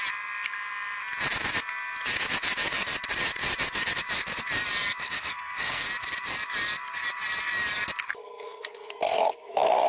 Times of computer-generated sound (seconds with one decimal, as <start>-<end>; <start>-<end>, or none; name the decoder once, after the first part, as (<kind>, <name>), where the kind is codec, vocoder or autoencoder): 5.0-5.8 (codec, SNAC); 8.2-9.9